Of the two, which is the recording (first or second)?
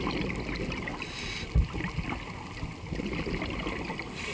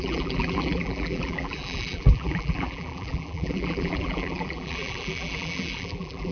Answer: first